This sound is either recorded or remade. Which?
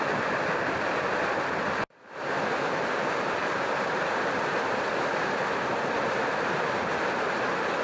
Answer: recorded